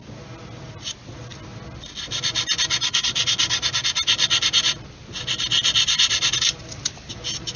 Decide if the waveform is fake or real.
real